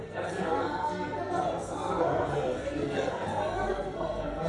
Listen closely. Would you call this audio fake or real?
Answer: fake